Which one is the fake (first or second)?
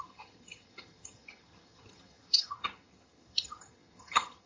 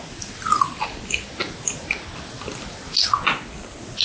first